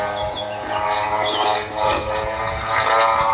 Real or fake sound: fake